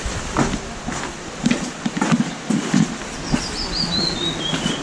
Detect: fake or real real